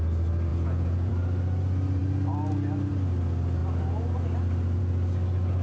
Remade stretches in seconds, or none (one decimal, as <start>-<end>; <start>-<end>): 0.5-1.1